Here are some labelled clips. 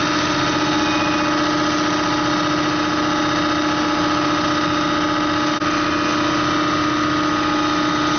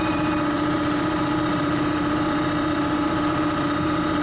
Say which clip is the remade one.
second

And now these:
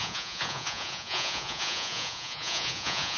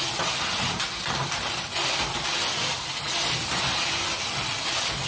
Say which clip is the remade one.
first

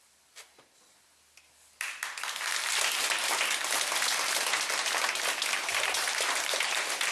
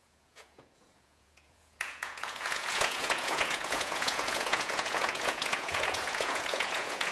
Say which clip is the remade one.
second